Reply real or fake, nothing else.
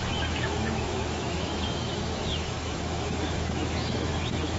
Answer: fake